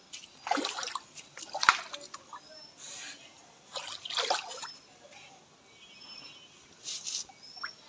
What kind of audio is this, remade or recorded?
recorded